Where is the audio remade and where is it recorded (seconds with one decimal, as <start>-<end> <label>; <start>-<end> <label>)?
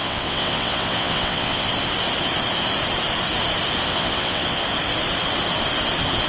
0.0-1.7 remade; 1.7-3.9 recorded; 3.9-4.6 remade; 4.6-6.3 recorded